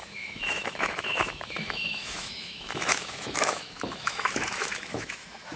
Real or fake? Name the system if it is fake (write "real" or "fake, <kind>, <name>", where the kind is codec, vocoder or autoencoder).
fake, autoencoder, DAC-VAE